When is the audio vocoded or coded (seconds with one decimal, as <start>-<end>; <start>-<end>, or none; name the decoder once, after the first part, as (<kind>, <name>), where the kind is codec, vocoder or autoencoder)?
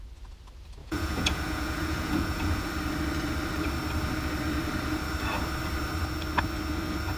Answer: 0.8-2.7 (vocoder, Vocos)